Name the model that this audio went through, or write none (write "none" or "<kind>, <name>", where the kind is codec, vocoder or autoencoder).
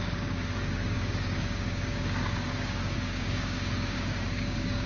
codec, DAC